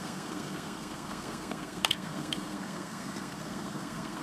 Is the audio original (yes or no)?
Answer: no